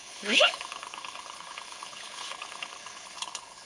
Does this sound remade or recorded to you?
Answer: remade